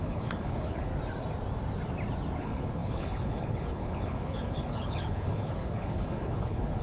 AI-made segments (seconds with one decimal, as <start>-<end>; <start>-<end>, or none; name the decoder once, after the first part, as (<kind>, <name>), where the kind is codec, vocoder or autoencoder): 0.0-0.9 (codec, HILCodec); 2.4-6.8